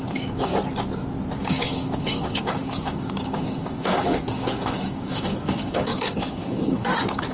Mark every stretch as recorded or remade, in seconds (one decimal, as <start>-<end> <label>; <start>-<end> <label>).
0.0-0.5 remade; 0.5-1.4 recorded; 1.4-7.3 remade